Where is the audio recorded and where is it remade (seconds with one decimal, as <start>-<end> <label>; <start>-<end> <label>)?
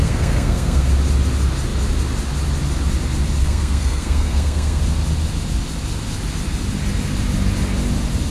0.0-0.9 remade; 0.9-3.4 recorded; 3.4-4.8 remade; 4.8-8.3 recorded